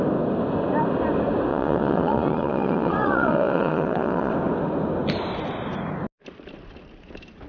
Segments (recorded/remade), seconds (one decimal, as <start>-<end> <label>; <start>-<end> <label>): 0.0-1.5 recorded; 1.5-4.3 remade; 4.3-7.5 recorded